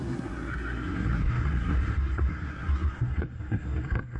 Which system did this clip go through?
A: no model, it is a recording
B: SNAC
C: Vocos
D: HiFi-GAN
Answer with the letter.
B